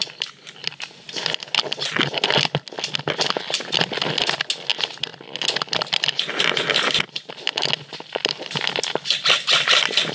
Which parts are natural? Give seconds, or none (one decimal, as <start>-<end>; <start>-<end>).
0.0-10.1